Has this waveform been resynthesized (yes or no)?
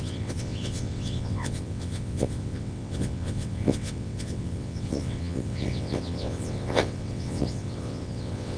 yes